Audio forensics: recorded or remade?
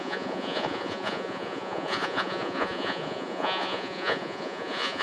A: remade